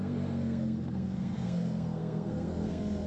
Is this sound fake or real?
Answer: fake